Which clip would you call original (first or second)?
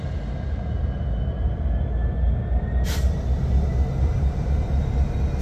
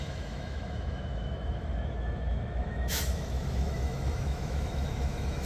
first